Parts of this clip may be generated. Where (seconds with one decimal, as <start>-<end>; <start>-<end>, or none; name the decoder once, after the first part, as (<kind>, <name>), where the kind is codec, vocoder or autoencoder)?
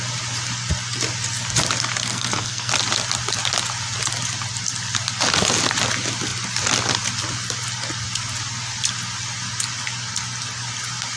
2.0-2.7 (codec, SNAC)